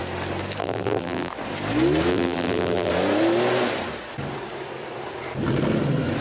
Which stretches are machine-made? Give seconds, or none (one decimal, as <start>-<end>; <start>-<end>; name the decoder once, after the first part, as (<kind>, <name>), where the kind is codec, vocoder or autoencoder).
0.6-1.3 (vocoder, BigVGAN v2); 2.1-2.9